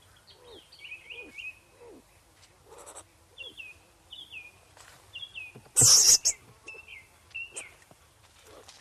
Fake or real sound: real